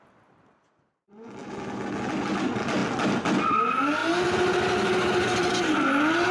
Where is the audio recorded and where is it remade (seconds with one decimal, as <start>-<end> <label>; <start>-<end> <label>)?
0.0-6.3 recorded